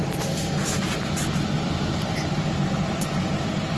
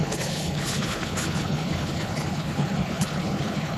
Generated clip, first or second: second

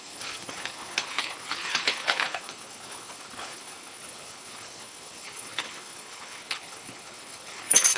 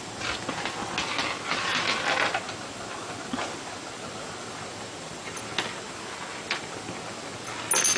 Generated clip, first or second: first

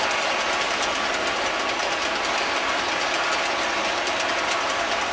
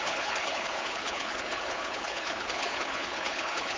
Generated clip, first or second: second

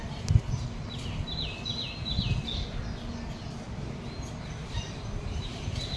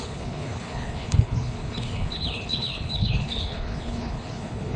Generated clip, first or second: second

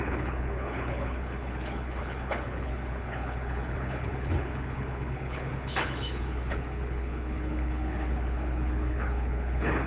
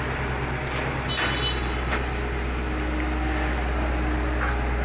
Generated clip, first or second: first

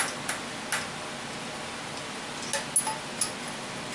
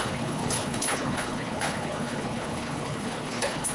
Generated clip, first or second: second